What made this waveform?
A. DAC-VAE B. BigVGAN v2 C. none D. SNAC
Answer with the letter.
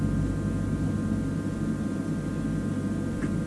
C